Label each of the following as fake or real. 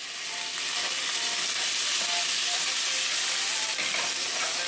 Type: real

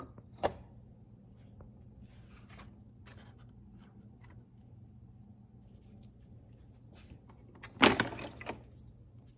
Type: real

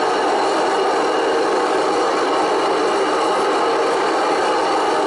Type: real